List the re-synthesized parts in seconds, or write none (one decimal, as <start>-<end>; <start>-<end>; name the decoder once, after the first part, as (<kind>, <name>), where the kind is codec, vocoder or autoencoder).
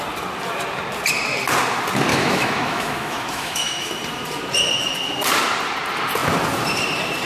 2.1-3.9 (autoencoder, DAC-VAE)